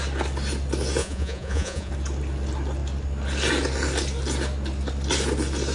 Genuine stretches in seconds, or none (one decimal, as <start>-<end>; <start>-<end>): 0.0-1.0; 1.9-5.7